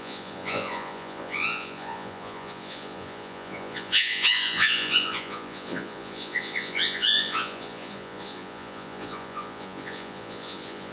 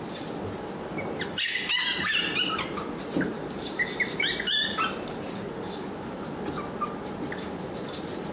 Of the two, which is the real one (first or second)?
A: second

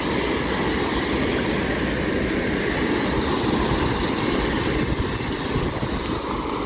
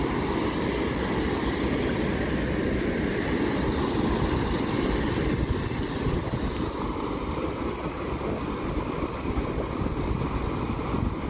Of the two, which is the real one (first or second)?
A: first